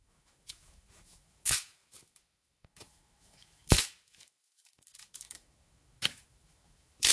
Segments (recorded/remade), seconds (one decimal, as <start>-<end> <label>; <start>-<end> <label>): 0.0-7.1 remade